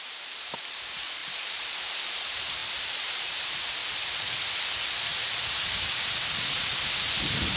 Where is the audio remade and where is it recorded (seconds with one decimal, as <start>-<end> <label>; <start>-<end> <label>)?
0.0-3.8 remade; 3.8-5.3 recorded; 5.3-7.6 remade